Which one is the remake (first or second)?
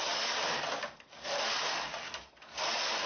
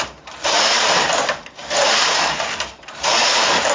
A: second